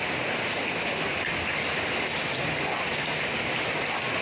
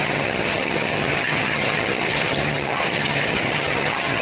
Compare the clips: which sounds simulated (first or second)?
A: second